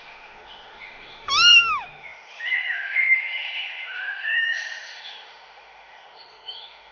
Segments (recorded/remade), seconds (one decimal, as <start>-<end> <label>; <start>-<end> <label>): 0.0-6.9 remade